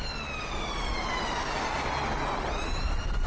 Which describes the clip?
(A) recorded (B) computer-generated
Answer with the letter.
A